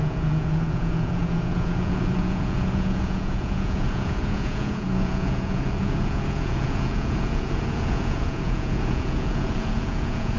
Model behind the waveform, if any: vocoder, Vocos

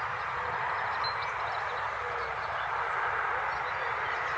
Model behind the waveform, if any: none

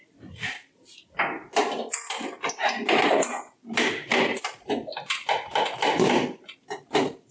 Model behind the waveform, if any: none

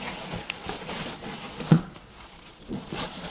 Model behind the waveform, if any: vocoder, Vocos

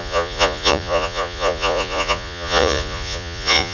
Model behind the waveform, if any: vocoder, Vocos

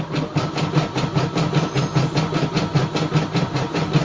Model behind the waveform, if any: none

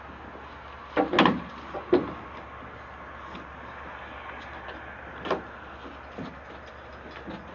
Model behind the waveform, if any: none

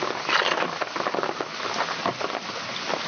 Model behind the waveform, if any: none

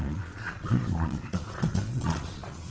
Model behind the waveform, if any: vocoder, Vocos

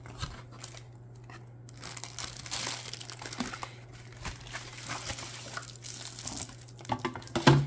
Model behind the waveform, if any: none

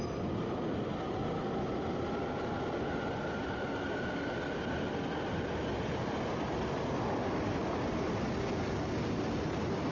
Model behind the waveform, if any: none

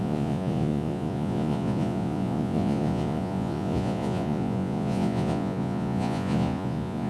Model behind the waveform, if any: vocoder, Vocos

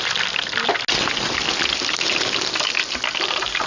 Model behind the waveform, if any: none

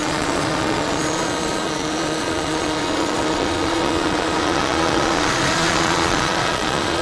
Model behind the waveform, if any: vocoder, Vocos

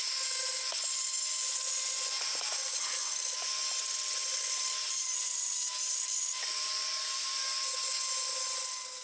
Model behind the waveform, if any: none